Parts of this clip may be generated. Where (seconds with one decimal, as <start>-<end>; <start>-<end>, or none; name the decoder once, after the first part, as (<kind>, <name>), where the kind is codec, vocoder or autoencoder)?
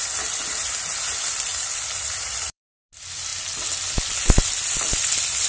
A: 1.5-2.9 (vocoder, BigVGAN v2)